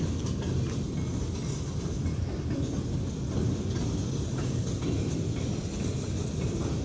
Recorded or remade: recorded